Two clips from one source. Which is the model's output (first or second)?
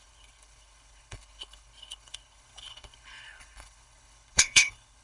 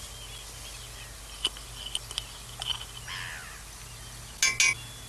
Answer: first